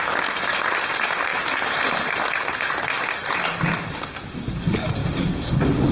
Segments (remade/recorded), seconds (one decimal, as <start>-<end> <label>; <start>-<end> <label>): 0.0-1.3 recorded; 1.3-2.2 remade; 2.2-3.2 recorded; 3.2-4.0 remade; 4.0-5.0 recorded; 5.0-5.5 remade; 5.5-5.9 recorded